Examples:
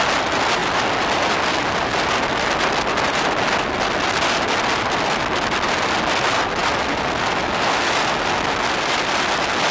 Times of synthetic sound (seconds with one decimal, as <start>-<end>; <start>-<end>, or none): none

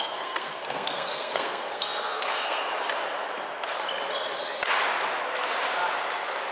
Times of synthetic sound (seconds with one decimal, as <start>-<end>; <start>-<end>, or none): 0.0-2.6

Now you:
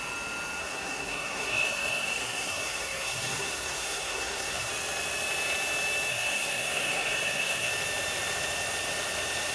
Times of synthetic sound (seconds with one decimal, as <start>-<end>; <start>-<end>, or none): 0.6-4.7; 6.1-7.7

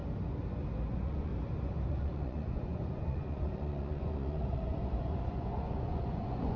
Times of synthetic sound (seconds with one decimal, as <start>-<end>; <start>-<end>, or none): 0.9-1.3; 1.9-6.6

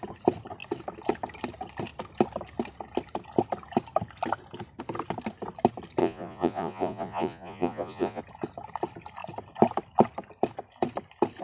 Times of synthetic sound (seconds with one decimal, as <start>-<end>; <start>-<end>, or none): 6.0-8.2

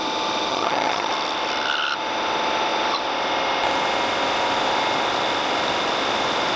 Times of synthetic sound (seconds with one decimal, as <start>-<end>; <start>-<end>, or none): 0.5-1.1

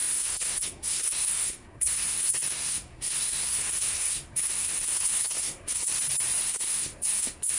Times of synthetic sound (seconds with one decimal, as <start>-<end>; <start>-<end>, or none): 0.0-5.9; 6.4-7.6

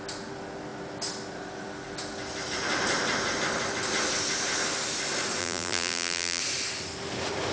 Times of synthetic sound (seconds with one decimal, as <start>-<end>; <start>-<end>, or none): 5.4-6.4